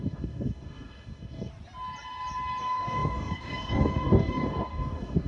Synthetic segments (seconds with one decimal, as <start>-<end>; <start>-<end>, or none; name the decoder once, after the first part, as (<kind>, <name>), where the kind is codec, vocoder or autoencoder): 0.0-1.5 (codec, DAC); 2.6-5.3